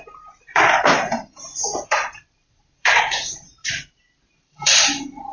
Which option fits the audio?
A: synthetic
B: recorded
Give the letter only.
A